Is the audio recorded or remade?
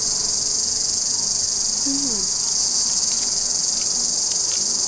recorded